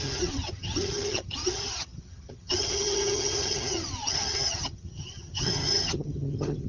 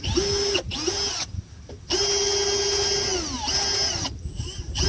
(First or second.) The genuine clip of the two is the second